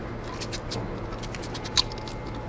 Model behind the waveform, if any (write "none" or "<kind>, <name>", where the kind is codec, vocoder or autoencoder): none